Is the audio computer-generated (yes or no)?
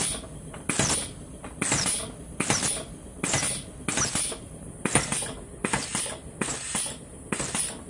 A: no